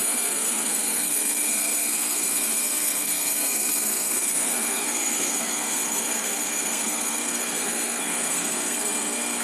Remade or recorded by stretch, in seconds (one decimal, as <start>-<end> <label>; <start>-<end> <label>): 0.0-9.4 remade